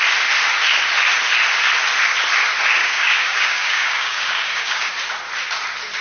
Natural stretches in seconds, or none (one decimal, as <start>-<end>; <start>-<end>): 0.0-2.8; 4.9-6.0